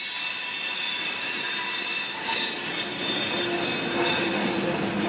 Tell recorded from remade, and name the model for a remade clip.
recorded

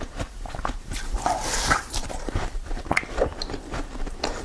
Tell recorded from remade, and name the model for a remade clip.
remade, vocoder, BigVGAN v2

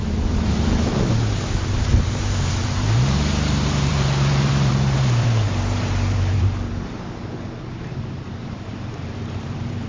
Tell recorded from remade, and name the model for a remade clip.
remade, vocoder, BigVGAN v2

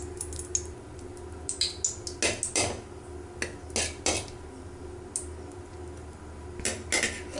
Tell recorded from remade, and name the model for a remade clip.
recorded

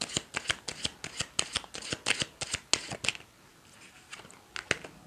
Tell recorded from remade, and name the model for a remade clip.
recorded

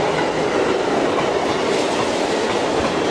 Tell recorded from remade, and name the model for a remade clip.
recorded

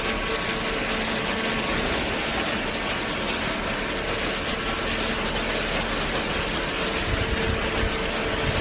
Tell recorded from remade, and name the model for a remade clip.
recorded